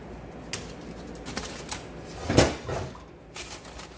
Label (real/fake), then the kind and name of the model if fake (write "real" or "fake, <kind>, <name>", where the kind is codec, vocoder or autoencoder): real